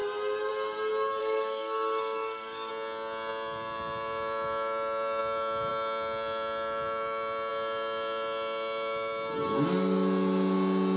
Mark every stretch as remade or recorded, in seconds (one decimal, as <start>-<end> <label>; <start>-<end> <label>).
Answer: 0.0-1.2 recorded; 1.2-2.7 remade; 2.7-11.0 recorded